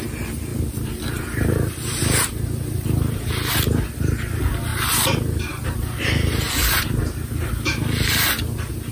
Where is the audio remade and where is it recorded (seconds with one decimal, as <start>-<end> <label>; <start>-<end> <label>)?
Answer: 0.0-0.5 recorded; 0.5-3.5 remade; 3.5-4.7 recorded; 4.7-7.0 remade; 7.0-8.9 recorded